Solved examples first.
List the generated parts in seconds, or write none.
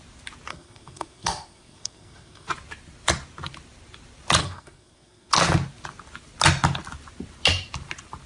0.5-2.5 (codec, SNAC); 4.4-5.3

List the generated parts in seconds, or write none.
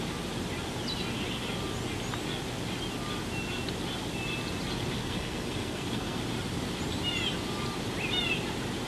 5.0-6.2 (codec, SNAC)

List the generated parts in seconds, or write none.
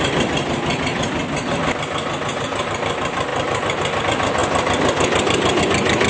none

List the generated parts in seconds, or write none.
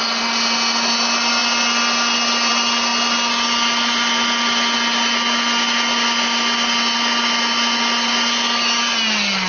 none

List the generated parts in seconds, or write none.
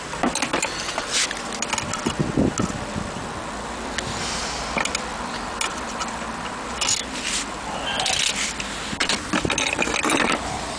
none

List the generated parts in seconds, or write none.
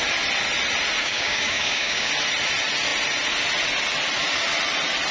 1.0-2.1 (codec, DAC)